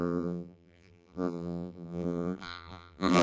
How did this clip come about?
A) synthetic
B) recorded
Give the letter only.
A